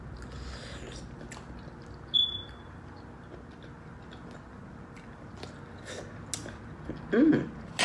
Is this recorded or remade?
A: recorded